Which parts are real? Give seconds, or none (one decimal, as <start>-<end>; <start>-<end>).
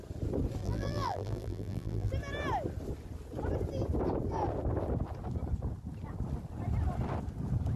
0.0-0.6; 2.1-7.8